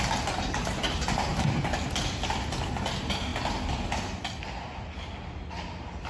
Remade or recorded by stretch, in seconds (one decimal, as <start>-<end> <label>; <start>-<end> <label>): 0.0-6.1 recorded